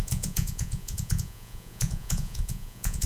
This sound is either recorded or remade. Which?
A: remade